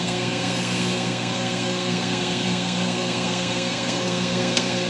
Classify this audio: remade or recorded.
remade